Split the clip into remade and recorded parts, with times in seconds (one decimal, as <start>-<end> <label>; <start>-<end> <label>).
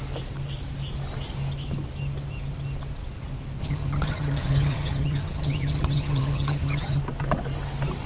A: 0.0-3.6 recorded; 3.6-7.0 remade; 7.0-8.1 recorded